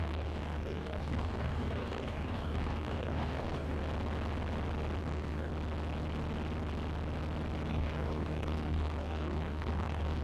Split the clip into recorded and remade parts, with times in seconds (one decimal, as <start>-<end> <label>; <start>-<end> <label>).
0.0-3.8 remade; 3.8-5.0 recorded; 5.0-5.5 remade; 5.5-7.7 recorded; 7.7-10.2 remade